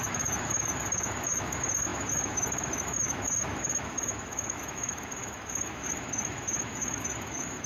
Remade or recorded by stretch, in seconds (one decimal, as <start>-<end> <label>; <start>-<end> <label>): 0.0-7.7 remade